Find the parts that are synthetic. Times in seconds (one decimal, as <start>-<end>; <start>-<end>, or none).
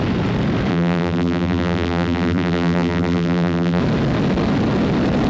0.7-3.8